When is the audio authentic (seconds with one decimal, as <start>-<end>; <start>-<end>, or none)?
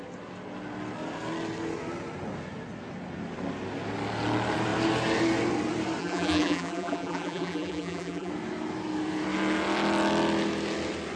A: 0.0-6.0; 8.3-11.2